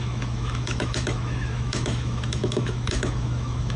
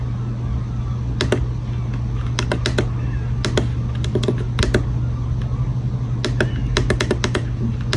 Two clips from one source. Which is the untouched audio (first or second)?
second